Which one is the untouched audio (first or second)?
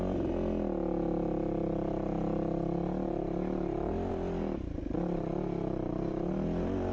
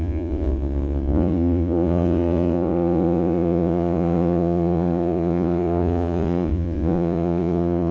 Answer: first